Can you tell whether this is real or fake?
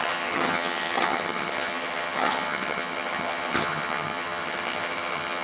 fake